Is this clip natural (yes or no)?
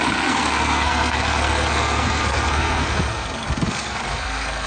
no